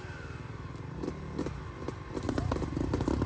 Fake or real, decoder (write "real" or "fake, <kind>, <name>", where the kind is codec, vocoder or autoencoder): fake, vocoder, BigVGAN v2